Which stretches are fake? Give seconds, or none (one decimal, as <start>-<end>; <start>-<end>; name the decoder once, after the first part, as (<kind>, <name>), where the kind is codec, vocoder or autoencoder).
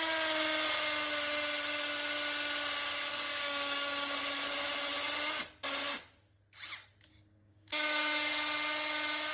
3.1-4.2 (codec, DAC); 7.1-8.3